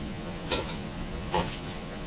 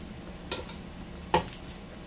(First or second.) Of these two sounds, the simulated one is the first